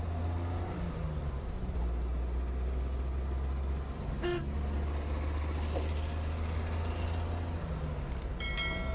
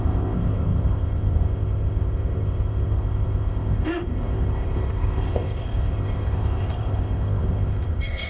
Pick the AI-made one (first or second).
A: second